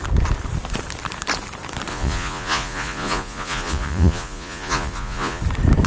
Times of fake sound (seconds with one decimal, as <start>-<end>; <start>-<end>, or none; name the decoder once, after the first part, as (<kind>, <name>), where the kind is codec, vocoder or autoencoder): 1.9-5.4 (vocoder, Vocos)